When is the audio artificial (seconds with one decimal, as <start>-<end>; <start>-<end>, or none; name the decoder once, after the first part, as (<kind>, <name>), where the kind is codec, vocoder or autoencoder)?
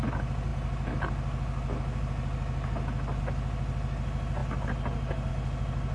none